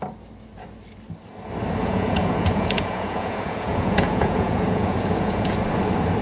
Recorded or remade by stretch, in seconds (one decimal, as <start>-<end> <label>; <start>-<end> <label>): 0.0-1.8 recorded; 1.8-5.5 remade; 5.5-6.2 recorded